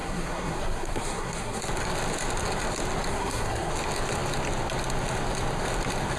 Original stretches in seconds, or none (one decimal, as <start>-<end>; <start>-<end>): 1.6-3.1; 3.7-6.2